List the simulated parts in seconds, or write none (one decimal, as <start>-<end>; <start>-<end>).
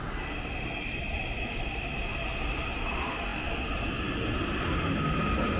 none